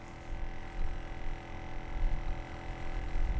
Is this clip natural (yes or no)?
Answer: yes